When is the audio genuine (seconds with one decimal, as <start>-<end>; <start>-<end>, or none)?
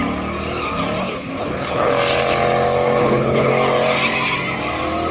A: 0.0-1.0; 1.9-3.0; 3.5-5.1